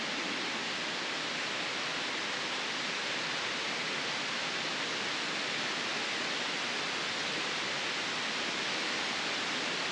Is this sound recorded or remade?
recorded